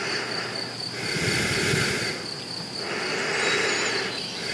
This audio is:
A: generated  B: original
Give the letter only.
B